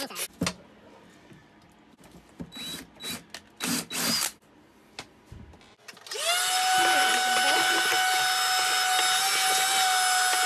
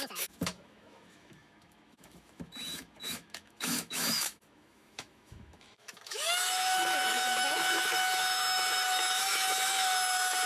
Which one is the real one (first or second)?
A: first